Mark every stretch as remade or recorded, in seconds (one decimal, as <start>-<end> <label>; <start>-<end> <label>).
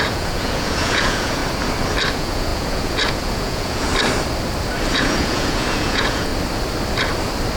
0.0-1.4 remade; 1.4-2.1 recorded; 2.1-3.9 remade; 3.9-4.9 recorded; 4.9-6.3 remade; 6.3-7.6 recorded